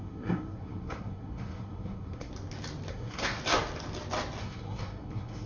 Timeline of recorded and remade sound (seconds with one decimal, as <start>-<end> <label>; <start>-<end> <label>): 0.0-2.3 remade; 2.3-2.9 recorded; 2.9-3.4 remade; 3.4-4.4 recorded; 4.4-5.5 remade